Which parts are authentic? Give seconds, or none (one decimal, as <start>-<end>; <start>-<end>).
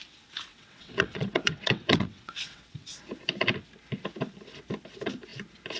0.0-0.5; 2.9-5.8